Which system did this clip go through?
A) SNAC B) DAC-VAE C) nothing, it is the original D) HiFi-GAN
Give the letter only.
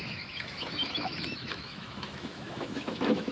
B